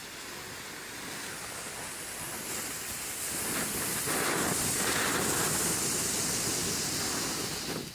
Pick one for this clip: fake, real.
real